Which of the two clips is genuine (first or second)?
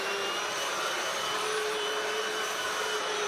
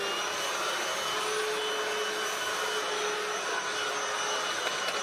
second